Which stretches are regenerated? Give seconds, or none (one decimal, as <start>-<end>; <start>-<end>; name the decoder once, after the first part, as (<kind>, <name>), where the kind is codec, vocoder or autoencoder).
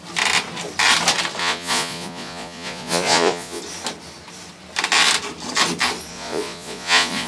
1.4-3.6 (vocoder, Vocos); 6.1-7.3